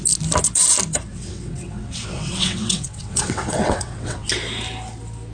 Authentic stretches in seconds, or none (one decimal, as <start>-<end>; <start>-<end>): 0.0-1.1; 4.3-5.3